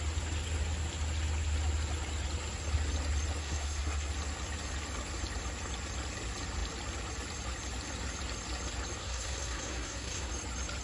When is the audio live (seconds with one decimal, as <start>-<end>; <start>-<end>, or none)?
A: 0.0-3.4; 4.1-9.0; 10.3-10.8